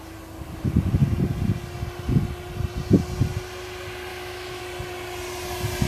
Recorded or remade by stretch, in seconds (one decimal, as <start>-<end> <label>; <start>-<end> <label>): 0.0-4.1 recorded; 4.1-4.6 remade; 4.6-5.9 recorded

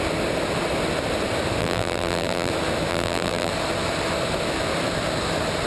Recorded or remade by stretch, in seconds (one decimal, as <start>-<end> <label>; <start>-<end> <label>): 0.0-1.6 recorded; 1.6-2.5 remade; 2.5-2.9 recorded; 2.9-3.5 remade; 3.5-5.7 recorded

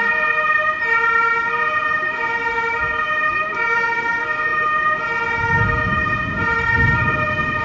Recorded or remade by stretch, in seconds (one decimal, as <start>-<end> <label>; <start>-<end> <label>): 0.0-7.6 recorded

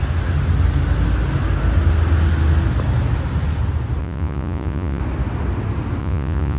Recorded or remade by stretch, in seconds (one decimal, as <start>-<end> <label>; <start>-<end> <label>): 0.0-4.0 recorded; 4.0-5.0 remade; 5.0-6.0 recorded; 6.0-6.6 remade

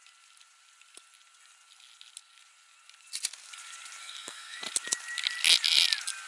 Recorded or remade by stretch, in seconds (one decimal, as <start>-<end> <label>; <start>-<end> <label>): 0.0-4.0 recorded; 4.0-4.6 remade; 4.6-6.3 recorded

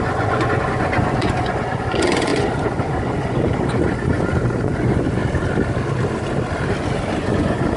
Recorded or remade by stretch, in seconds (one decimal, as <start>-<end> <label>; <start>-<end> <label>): 0.0-5.2 remade; 5.2-7.2 recorded; 7.2-7.8 remade

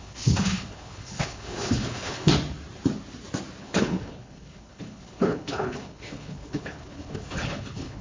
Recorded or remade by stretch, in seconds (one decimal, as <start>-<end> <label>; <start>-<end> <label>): 0.0-2.3 remade; 2.3-3.6 recorded; 3.6-8.0 remade

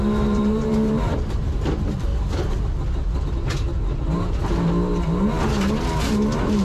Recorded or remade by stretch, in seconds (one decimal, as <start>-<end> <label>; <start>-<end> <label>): 0.0-2.1 remade; 2.1-6.1 recorded; 6.1-6.6 remade